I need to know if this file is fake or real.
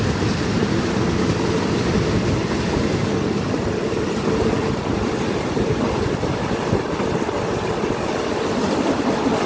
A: fake